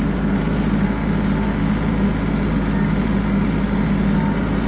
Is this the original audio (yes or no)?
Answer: yes